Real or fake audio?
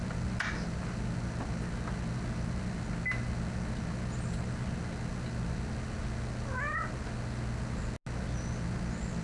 real